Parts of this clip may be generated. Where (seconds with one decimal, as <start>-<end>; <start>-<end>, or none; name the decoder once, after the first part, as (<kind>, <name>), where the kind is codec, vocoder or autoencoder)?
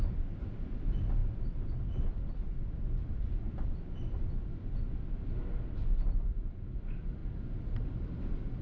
0.0-8.6 (vocoder, BigVGAN v2)